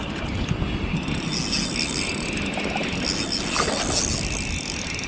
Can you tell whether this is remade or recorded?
recorded